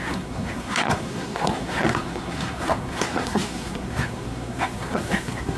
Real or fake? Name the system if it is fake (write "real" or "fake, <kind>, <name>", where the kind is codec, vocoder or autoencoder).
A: fake, codec, SNAC